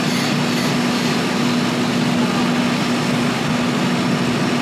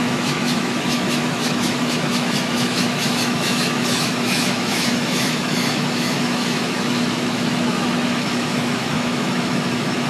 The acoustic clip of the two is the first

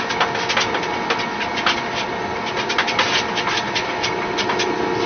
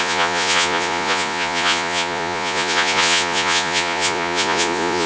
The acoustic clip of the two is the first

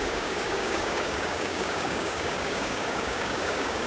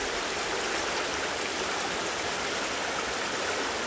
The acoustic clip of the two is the second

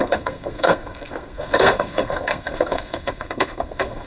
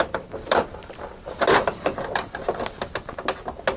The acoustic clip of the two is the second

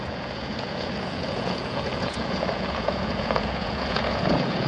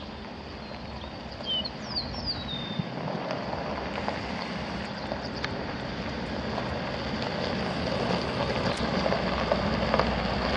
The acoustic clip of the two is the second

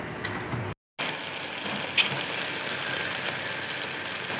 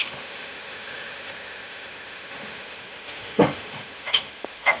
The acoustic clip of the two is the first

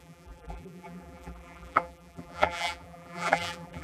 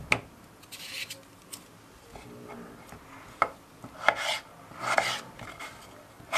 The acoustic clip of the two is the second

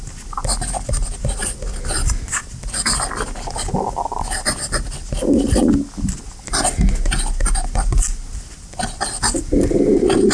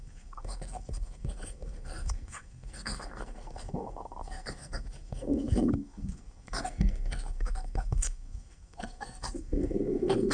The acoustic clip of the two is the first